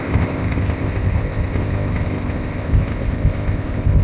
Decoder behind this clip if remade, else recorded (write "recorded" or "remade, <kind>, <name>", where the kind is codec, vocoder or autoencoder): remade, codec, ZipCodec